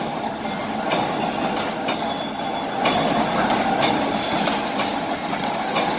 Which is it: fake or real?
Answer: real